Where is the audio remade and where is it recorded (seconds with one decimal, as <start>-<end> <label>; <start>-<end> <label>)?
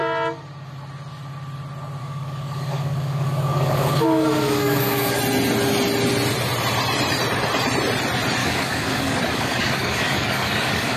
0.0-2.0 recorded; 2.0-5.2 remade; 5.2-8.4 recorded; 8.4-11.0 remade